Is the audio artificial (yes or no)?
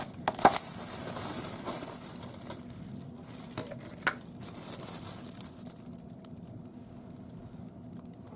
no